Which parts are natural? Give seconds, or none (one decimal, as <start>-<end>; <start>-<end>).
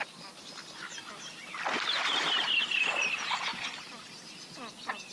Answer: 0.0-3.5; 4.1-5.1